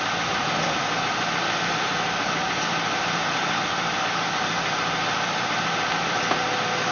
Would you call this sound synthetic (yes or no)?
no